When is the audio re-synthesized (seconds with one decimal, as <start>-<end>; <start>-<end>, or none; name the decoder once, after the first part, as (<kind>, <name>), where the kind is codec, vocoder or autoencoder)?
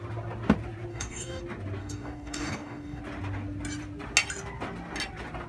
0.9-1.4 (codec, DAC); 1.8-3.0